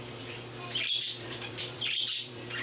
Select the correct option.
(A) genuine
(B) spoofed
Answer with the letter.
B